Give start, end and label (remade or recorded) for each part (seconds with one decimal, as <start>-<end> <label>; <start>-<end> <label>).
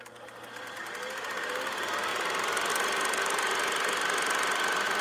0.0-5.0 recorded